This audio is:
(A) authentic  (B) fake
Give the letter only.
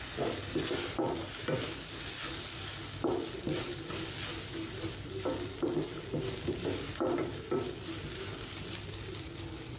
A